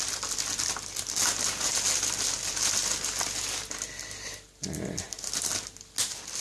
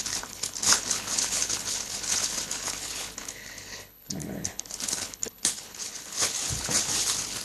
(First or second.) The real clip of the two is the first